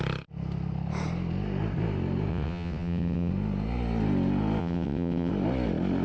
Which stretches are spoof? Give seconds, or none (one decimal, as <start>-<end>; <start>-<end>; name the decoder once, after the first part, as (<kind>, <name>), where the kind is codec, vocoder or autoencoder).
2.3-3.3 (vocoder, WaveNeXt); 4.6-5.3